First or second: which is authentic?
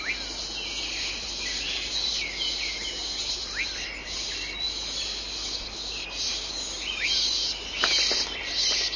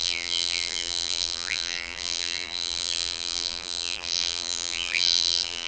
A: first